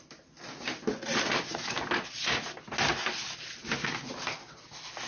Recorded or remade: recorded